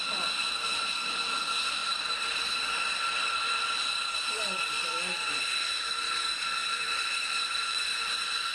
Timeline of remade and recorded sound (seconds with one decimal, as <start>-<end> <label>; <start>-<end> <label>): 0.0-1.8 recorded; 1.8-2.4 remade; 2.4-6.6 recorded; 6.6-8.0 remade; 8.0-8.5 recorded